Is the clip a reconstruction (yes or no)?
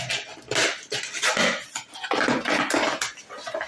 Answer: no